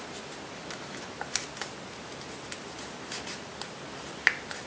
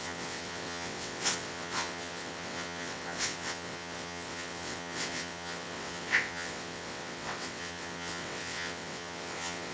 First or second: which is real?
first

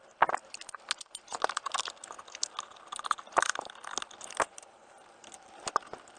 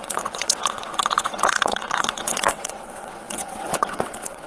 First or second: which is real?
first